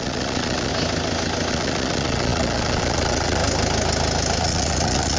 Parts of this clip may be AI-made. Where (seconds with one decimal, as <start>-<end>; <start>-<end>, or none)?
0.0-0.7; 1.5-3.4; 4.4-5.2